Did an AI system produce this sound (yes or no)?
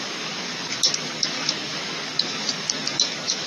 yes